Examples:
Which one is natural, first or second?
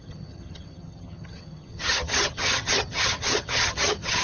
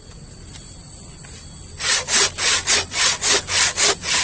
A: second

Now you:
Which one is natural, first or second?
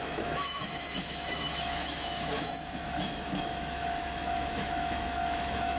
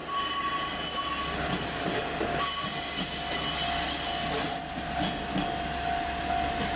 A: second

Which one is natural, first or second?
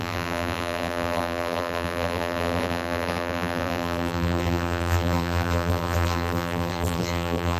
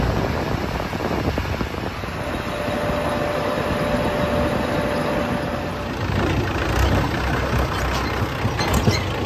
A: second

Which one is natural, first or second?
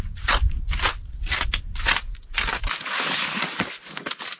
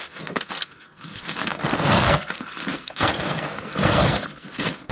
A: first